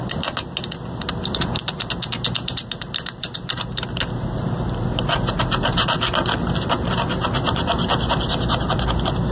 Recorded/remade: recorded